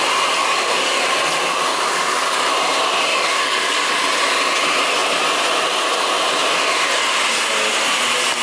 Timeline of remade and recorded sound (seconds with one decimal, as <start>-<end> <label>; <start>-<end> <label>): 0.0-0.4 recorded; 0.4-1.0 remade; 1.0-1.7 recorded; 1.7-2.5 remade; 2.5-3.1 recorded; 3.1-3.9 remade; 3.9-8.4 recorded